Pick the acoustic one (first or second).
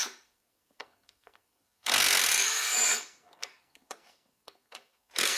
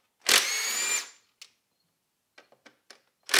second